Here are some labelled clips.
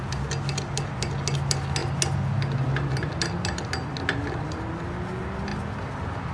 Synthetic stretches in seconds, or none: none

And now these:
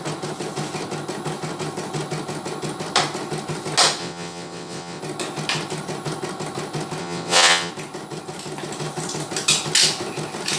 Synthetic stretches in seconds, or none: 4.0-5.0 (vocoder, WaveNeXt); 7.0-7.7

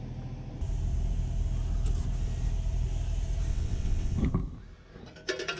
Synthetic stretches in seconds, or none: 3.5-4.2 (vocoder, WaveNeXt)

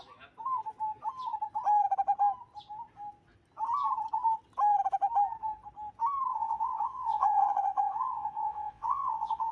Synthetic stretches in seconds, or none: 6.3-9.5 (vocoder, WaveNeXt)

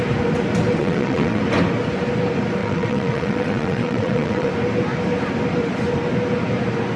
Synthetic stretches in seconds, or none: 0.8-1.4 (vocoder, WaveNeXt); 2.6-4.5